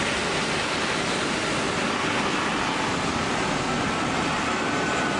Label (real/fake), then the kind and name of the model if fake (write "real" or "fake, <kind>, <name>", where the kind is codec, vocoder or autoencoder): real